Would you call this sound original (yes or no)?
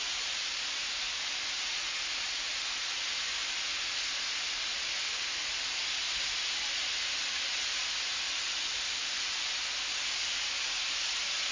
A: yes